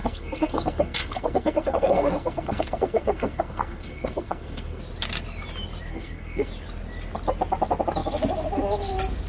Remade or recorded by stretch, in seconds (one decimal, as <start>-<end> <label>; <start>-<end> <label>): 0.0-4.8 remade; 4.8-5.9 recorded; 5.9-6.5 remade; 6.5-9.3 recorded